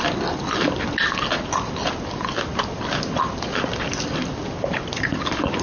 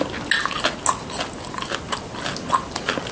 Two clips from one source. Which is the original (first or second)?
second